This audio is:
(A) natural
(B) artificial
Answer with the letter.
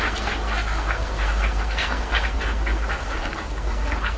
B